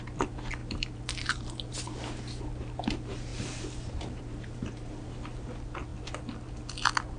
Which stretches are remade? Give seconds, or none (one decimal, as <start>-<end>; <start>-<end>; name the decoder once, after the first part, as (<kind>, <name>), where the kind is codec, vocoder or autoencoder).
0.6-1.4 (vocoder, BigVGAN v2); 3.3-5.0